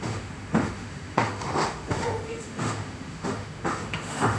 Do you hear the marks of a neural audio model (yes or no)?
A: yes